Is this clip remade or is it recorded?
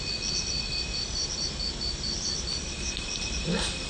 recorded